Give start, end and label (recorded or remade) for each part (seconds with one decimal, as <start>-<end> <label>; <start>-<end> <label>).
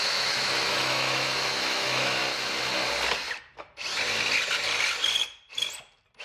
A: 0.0-2.2 remade; 2.2-6.2 recorded